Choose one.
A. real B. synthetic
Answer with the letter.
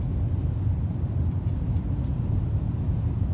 A